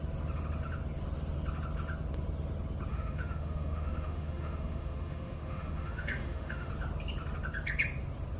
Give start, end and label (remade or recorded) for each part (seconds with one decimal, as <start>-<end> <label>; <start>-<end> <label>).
0.0-2.9 recorded; 2.9-6.7 remade; 6.7-8.4 recorded